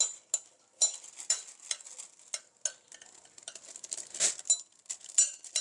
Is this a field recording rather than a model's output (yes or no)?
yes